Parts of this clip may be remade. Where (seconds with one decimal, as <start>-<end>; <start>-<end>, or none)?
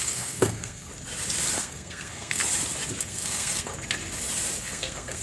0.0-0.9; 1.6-2.4; 3.0-3.7; 4.6-5.2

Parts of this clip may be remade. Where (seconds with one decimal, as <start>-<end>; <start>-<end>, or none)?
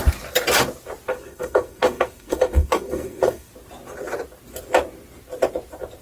1.1-3.5